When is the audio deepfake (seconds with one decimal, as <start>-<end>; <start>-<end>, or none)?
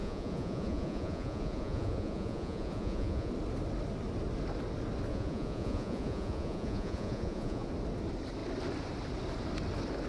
0.0-3.3; 5.1-7.7